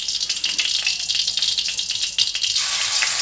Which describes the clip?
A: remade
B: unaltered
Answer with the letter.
B